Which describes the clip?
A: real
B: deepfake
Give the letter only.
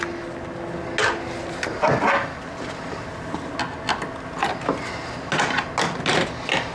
A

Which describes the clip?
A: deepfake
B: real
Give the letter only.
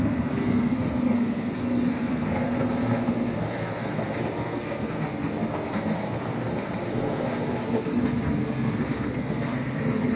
A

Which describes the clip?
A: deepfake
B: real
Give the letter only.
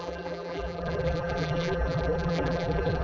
A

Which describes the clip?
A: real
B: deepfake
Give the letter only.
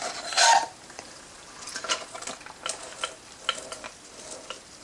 A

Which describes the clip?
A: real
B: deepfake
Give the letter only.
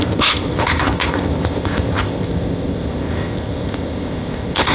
B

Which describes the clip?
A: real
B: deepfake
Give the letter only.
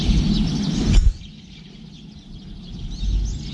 A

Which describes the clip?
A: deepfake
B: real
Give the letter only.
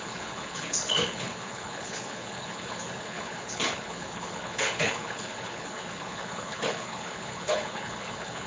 A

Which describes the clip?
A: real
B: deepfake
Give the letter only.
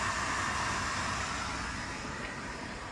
A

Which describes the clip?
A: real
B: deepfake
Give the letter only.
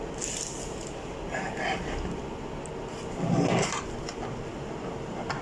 A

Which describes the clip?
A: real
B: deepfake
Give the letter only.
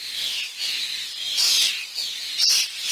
B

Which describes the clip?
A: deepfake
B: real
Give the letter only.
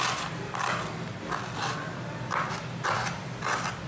B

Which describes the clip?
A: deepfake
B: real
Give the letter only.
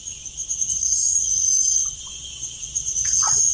A